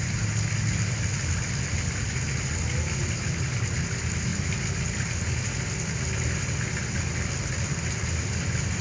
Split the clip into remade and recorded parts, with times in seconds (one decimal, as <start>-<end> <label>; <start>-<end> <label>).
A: 0.0-8.8 recorded